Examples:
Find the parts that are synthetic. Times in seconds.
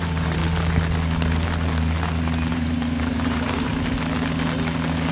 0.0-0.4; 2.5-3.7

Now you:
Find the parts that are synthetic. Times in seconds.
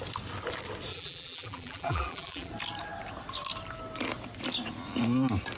0.9-2.5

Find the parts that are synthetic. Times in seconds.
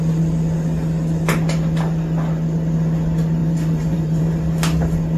3.4-4.2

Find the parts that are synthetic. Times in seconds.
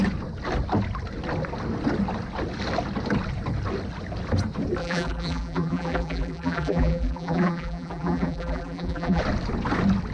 4.8-9.2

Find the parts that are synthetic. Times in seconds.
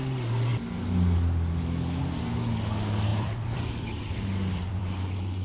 3.1-4.9